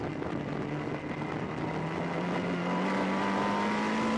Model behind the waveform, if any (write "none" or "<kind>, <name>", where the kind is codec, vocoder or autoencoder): none